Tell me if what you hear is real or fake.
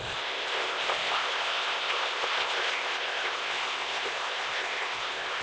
fake